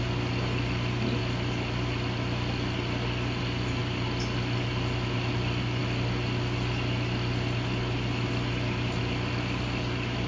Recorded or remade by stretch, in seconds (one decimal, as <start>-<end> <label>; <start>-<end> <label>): 0.0-10.3 recorded